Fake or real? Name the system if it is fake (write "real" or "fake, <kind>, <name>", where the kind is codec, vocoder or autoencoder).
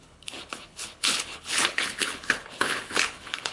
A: fake, codec, HILCodec